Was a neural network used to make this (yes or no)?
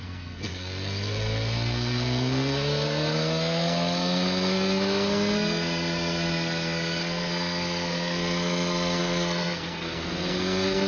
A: yes